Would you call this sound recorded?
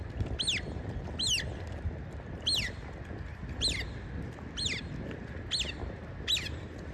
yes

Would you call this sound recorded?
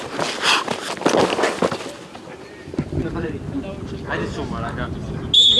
yes